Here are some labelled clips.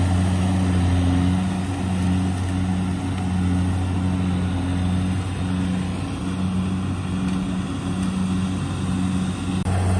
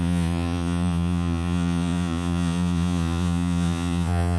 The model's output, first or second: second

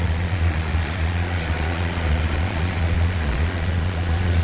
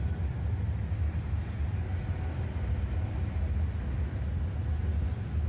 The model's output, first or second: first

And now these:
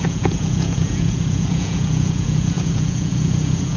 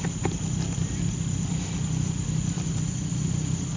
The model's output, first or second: first